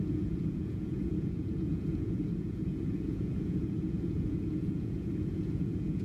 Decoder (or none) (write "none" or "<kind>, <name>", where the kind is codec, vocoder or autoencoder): vocoder, Vocos